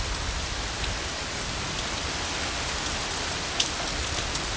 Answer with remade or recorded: recorded